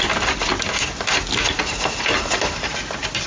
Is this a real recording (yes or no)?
yes